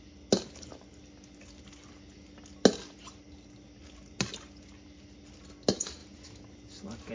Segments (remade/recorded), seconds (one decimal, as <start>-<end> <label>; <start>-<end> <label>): 0.0-7.1 recorded